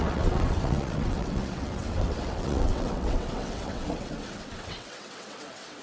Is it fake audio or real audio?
fake